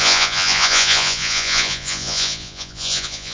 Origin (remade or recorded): remade